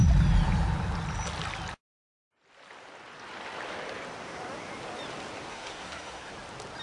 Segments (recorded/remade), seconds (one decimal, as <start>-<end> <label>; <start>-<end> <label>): 0.0-5.5 recorded; 5.5-6.3 remade; 6.3-6.8 recorded